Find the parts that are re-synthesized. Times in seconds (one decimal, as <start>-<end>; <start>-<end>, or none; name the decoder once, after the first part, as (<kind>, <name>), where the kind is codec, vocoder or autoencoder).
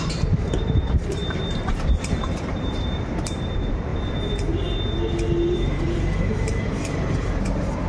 0.0-3.9 (vocoder, BigVGAN v2); 5.5-7.9